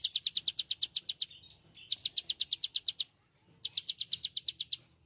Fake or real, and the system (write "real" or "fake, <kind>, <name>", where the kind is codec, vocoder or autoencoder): real